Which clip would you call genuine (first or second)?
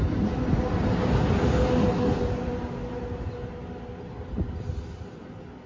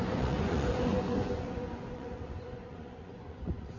first